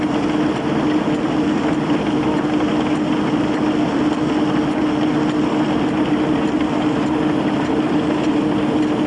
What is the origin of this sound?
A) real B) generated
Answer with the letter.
A